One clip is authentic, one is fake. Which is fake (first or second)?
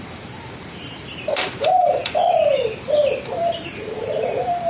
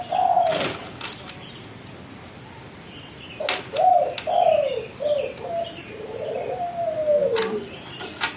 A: first